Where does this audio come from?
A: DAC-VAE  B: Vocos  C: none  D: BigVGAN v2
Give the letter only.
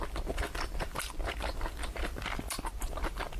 C